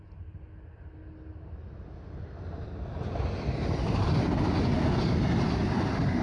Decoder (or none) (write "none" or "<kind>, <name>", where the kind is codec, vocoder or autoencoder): none